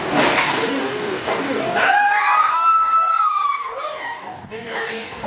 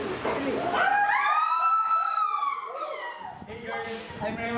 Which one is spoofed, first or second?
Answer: first